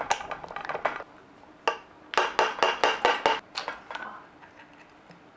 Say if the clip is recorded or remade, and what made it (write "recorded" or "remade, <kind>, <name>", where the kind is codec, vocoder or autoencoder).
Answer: recorded